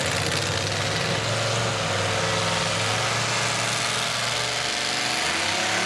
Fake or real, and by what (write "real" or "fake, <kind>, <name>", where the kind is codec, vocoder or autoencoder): real